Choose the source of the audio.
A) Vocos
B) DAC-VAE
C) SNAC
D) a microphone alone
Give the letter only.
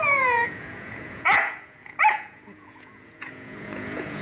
A